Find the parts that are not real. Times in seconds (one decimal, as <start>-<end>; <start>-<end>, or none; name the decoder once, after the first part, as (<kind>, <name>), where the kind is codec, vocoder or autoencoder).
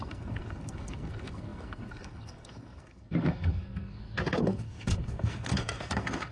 0.0-6.3 (codec, SNAC)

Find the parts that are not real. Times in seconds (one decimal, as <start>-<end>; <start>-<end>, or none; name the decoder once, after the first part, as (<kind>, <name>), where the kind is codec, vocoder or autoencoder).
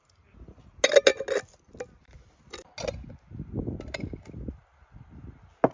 none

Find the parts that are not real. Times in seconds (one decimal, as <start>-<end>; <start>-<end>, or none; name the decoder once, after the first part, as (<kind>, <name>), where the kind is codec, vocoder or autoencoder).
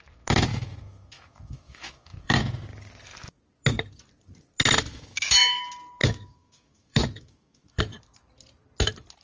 0.5-2.4 (autoencoder, DAC-VAE); 4.9-5.6; 6.0-7.8